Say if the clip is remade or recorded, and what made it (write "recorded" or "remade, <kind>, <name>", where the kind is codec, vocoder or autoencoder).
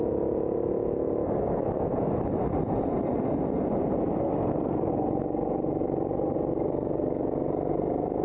recorded